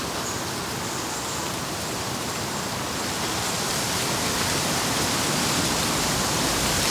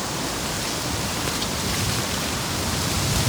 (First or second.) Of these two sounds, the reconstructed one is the second